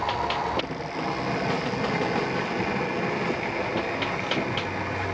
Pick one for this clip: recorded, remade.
recorded